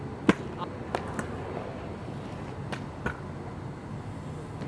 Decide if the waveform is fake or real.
real